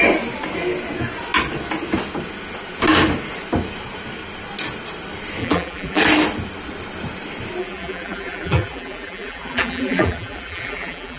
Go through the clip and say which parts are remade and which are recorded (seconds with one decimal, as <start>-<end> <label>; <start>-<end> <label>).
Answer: 0.0-5.4 recorded; 5.4-6.0 remade; 6.0-7.6 recorded; 7.6-11.2 remade